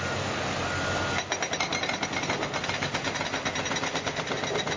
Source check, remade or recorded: recorded